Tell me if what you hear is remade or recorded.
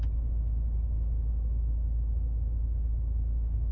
recorded